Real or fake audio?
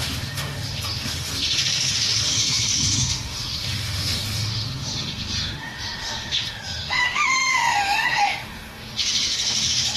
fake